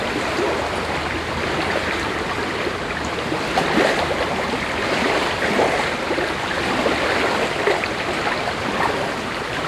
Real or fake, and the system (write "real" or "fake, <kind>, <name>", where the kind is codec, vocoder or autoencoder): real